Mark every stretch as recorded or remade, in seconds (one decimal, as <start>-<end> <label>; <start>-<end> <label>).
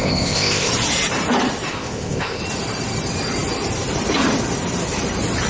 0.0-0.7 remade; 0.7-1.7 recorded; 1.7-2.4 remade; 2.4-5.5 recorded